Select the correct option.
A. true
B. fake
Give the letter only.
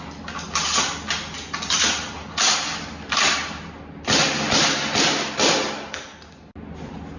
A